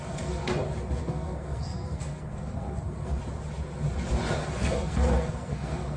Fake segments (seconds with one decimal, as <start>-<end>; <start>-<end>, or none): 0.0-0.5; 1.0-3.2; 4.6-6.0